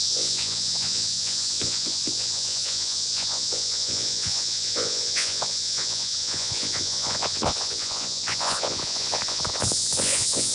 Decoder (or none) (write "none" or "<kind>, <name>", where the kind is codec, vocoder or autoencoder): vocoder, Vocos